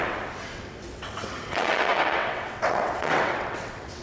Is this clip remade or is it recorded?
remade